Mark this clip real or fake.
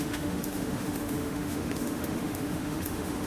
fake